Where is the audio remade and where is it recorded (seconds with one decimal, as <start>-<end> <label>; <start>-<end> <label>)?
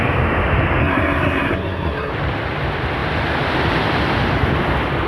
0.0-0.8 recorded; 0.8-2.1 remade; 2.1-5.1 recorded